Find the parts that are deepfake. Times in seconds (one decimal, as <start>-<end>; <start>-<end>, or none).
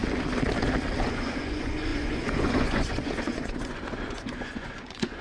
1.0-5.2